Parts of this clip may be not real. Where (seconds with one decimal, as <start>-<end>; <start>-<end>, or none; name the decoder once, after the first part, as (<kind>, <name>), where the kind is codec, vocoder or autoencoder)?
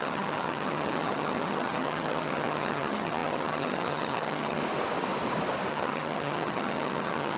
0.0-4.6 (vocoder, HiFi-GAN); 5.7-7.4